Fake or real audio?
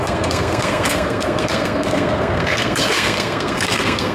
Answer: fake